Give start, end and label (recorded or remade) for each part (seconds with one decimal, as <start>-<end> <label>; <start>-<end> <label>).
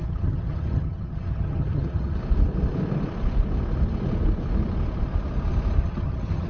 0.0-2.2 remade; 2.2-5.8 recorded; 5.8-6.5 remade